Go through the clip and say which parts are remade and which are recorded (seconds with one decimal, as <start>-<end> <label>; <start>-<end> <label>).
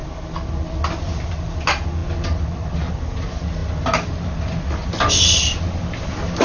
0.0-6.4 recorded